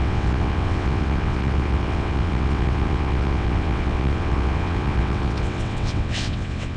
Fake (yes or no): yes